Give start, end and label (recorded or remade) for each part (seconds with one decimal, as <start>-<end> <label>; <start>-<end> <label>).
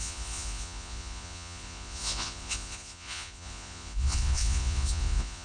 0.0-5.4 remade